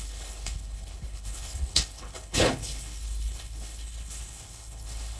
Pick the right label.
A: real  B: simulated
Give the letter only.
B